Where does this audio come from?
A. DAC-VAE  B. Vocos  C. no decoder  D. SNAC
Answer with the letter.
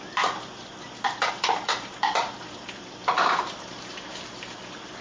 C